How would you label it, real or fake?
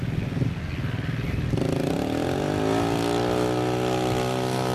real